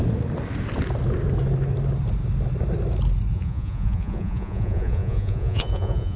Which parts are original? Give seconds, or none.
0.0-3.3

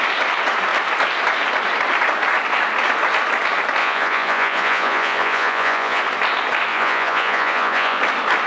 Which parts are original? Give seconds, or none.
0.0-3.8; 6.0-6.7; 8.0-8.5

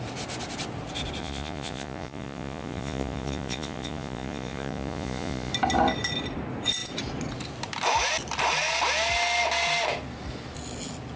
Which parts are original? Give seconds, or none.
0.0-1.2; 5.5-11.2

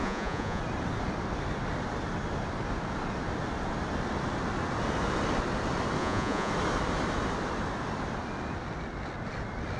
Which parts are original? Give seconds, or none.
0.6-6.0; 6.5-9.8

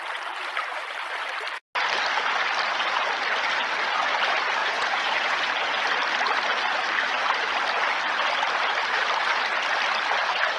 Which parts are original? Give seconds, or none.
0.0-4.6; 5.5-10.6

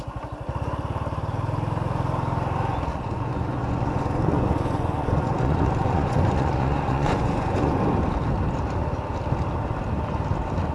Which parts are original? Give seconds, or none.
0.0-2.9; 7.8-10.7

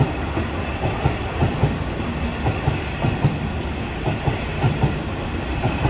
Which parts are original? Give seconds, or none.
0.0-5.9